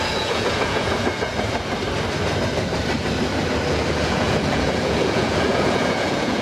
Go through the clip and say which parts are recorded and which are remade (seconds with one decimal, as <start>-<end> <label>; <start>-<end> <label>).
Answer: 0.0-1.3 remade; 1.3-3.7 recorded; 3.7-6.4 remade

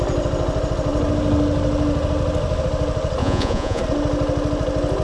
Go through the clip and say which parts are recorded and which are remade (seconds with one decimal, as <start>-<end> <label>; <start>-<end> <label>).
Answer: 0.0-3.2 recorded; 3.2-3.8 remade; 3.8-5.0 recorded

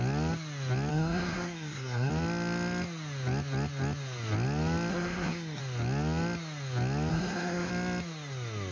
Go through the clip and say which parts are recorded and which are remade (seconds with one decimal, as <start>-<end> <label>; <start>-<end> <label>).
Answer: 0.0-0.9 recorded; 0.9-2.1 remade; 2.1-4.9 recorded; 4.9-5.6 remade; 5.6-7.1 recorded; 7.1-7.7 remade; 7.7-8.7 recorded

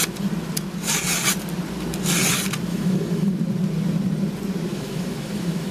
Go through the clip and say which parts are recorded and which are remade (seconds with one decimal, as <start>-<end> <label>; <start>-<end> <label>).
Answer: 0.0-2.7 recorded; 2.7-3.3 remade; 3.3-4.7 recorded; 4.7-5.7 remade

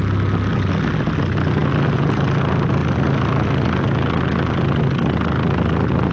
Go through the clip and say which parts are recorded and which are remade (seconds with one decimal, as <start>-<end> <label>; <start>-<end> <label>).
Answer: 0.0-6.1 recorded

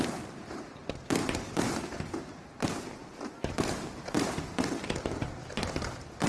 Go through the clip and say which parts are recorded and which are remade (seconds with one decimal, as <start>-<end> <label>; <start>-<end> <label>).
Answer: 0.0-1.2 remade; 1.2-5.0 recorded; 5.0-6.3 remade

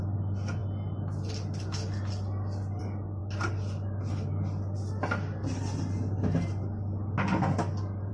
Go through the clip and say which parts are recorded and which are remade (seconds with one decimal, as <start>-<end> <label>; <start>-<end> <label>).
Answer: 0.0-8.1 recorded